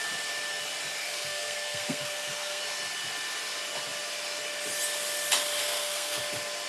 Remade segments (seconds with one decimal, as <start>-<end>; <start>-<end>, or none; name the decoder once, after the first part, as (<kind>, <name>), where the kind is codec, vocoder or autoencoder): 1.0-2.6 (codec, SNAC); 5.6-6.2